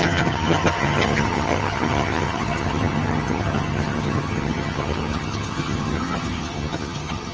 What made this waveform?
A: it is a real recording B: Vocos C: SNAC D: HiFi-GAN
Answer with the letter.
D